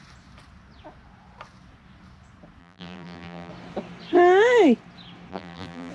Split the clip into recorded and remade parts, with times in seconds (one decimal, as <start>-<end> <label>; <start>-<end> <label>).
0.0-2.6 recorded; 2.6-3.5 remade; 3.5-5.3 recorded; 5.3-5.9 remade